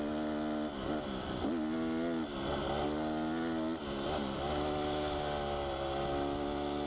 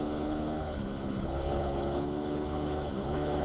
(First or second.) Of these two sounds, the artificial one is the second